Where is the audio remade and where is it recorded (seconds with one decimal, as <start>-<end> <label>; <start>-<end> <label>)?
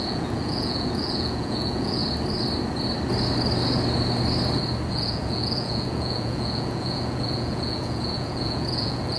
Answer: 0.0-2.0 remade; 2.0-4.9 recorded; 4.9-9.2 remade